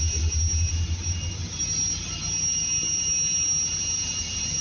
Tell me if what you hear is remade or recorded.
recorded